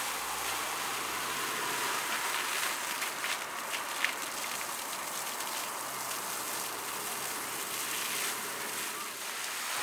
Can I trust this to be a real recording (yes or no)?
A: yes